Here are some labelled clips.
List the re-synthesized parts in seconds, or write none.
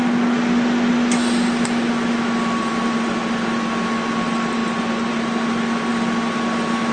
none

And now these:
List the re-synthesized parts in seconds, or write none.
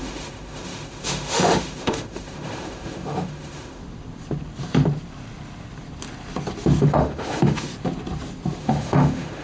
0.0-3.8; 6.8-7.7; 8.6-9.4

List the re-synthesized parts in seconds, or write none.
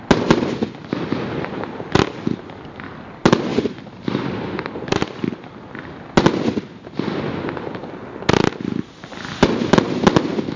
3.5-5.3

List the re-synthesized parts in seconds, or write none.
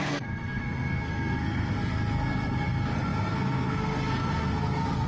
0.0-5.1